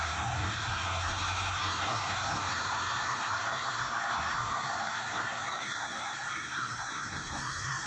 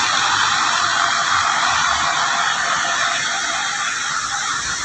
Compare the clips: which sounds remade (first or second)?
first